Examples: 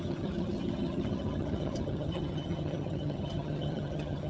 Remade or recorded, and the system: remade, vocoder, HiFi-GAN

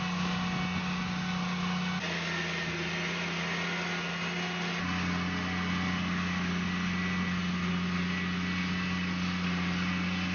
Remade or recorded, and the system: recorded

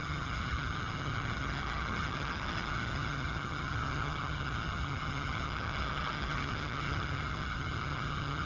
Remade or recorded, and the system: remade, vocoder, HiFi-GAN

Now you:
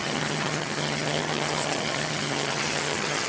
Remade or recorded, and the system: remade, vocoder, HiFi-GAN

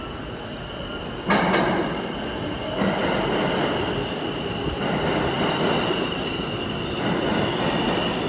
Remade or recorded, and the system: recorded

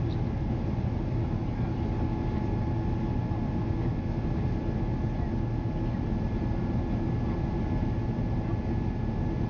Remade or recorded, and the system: recorded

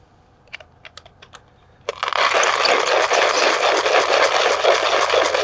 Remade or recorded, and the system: recorded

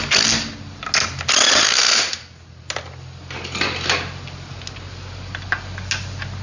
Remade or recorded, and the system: recorded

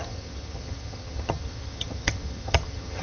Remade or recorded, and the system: remade, vocoder, HiFi-GAN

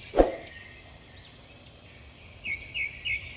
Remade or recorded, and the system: recorded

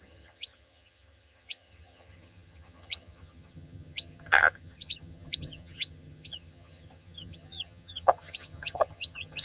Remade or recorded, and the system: remade, vocoder, HiFi-GAN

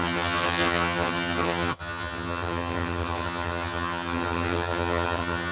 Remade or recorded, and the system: remade, vocoder, HiFi-GAN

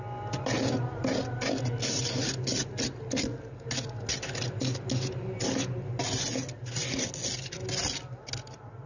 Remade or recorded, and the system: recorded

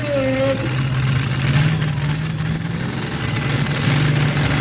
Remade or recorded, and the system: recorded